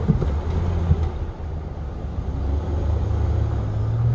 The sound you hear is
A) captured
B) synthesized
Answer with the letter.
A